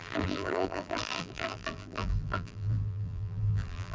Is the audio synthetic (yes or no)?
yes